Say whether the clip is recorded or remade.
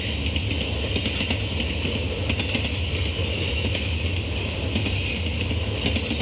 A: recorded